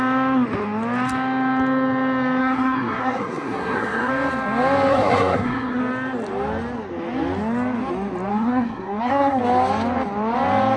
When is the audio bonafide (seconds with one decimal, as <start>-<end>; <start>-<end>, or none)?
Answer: 0.0-2.4; 4.1-4.9; 5.8-8.3; 9.4-10.8